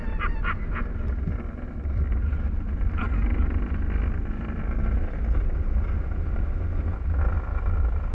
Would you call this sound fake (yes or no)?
no